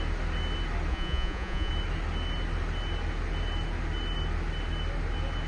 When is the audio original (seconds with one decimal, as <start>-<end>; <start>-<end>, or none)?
0.0-0.9; 1.7-5.5